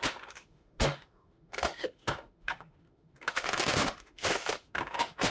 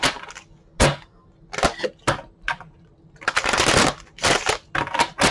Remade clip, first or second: first